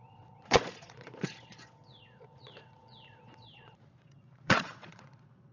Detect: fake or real fake